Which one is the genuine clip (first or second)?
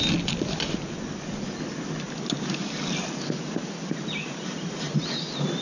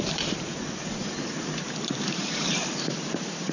first